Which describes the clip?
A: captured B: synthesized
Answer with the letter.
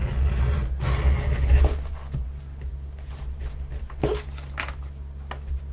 A